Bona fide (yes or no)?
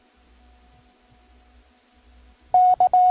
yes